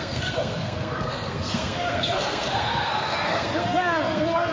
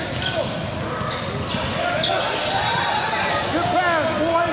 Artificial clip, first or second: first